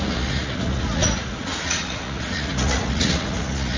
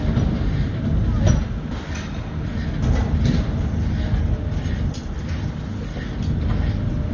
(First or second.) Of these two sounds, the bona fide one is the second